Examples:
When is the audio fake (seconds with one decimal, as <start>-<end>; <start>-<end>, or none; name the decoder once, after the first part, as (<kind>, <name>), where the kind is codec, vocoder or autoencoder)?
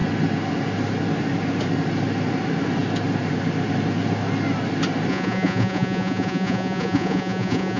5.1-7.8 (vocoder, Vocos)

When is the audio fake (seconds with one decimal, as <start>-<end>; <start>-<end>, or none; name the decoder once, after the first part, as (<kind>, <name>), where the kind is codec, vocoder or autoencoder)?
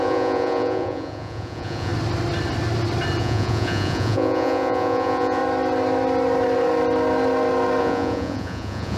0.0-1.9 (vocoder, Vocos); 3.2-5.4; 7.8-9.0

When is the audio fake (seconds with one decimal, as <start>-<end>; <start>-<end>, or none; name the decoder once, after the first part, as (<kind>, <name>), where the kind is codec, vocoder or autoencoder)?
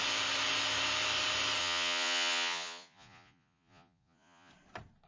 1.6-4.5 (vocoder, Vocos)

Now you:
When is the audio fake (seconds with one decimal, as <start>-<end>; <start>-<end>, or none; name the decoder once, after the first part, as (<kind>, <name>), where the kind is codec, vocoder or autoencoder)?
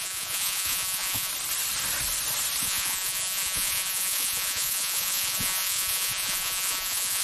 0.0-1.3 (vocoder, Vocos); 2.6-7.2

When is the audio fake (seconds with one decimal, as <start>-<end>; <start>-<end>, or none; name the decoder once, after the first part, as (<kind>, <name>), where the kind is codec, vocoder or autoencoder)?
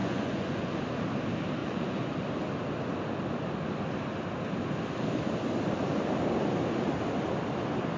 0.0-0.8 (vocoder, Vocos); 1.6-2.1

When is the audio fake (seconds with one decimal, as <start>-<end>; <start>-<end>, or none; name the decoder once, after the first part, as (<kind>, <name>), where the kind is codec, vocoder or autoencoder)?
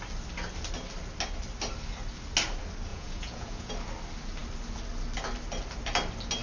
2.9-3.7 (vocoder, Vocos)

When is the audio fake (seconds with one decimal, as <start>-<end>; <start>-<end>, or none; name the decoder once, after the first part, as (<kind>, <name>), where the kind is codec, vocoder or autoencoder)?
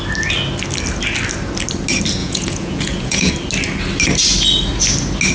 2.2-3.3 (vocoder, Vocos)